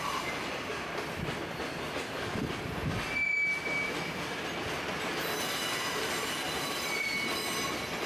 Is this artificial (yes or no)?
no